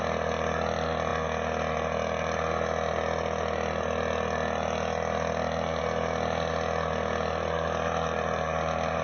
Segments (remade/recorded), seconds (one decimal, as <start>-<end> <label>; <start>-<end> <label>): 0.0-9.0 recorded